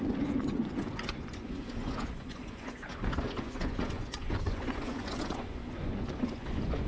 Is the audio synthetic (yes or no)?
yes